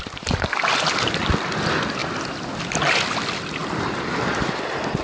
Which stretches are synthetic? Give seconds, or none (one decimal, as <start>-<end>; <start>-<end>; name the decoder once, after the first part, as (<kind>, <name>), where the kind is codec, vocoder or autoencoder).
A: none